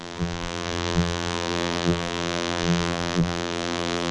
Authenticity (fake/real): fake